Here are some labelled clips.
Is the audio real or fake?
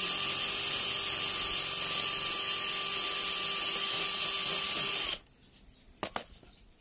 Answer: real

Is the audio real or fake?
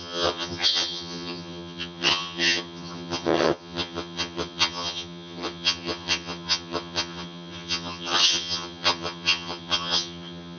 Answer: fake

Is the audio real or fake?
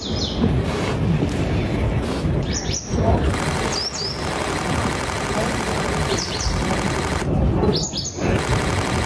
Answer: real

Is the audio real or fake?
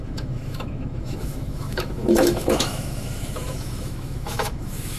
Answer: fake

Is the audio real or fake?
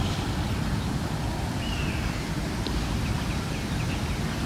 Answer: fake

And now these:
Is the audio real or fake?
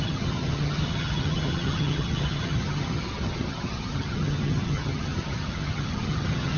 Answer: fake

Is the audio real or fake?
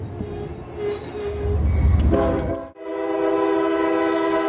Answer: real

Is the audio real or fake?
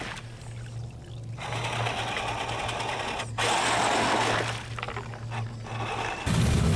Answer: real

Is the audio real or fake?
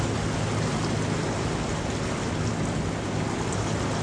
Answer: real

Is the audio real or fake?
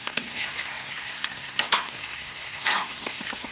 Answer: fake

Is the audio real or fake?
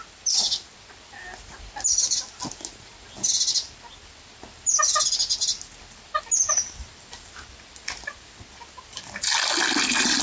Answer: real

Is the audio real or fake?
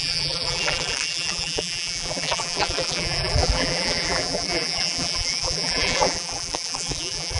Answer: fake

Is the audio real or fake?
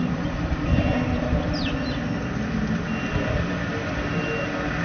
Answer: real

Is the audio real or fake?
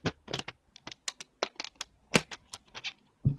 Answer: real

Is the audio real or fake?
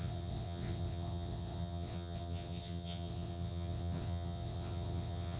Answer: fake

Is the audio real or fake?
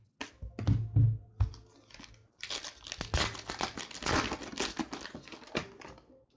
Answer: real